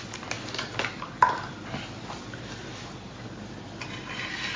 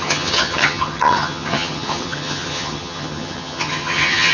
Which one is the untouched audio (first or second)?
first